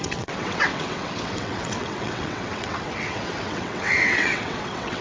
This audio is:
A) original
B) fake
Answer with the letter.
B